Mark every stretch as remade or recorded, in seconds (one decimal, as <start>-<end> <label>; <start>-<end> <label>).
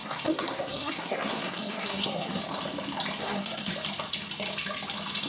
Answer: 0.0-2.4 remade; 2.4-3.2 recorded; 3.2-3.7 remade; 3.7-5.3 recorded